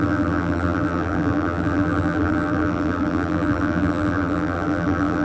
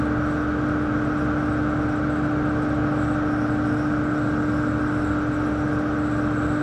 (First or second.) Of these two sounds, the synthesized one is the first